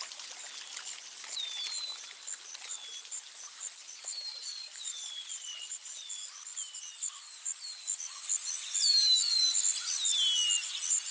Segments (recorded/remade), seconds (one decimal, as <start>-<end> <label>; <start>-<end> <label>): 0.0-4.3 recorded; 4.3-6.1 remade; 6.1-11.1 recorded